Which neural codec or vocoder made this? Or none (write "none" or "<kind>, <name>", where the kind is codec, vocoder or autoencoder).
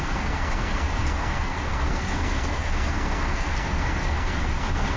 codec, SNAC